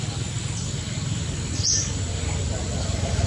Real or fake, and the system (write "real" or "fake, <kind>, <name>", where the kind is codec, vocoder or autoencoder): real